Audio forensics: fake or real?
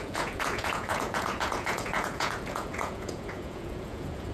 fake